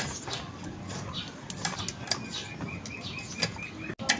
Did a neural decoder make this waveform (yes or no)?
no